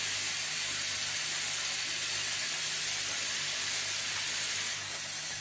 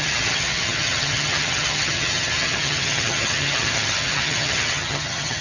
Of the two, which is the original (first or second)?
first